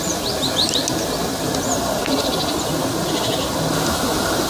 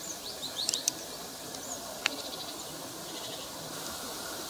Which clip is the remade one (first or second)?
second